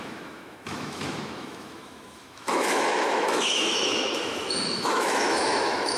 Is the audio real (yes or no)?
no